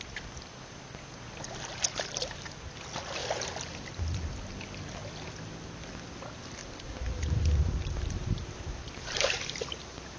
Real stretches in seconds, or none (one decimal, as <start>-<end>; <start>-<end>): 0.0-6.6